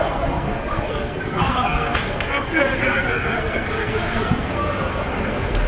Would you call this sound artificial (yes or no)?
yes